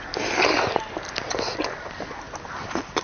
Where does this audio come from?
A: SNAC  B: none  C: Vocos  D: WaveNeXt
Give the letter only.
B